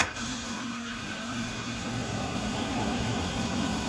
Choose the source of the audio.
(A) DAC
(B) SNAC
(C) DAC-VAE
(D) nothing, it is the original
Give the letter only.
B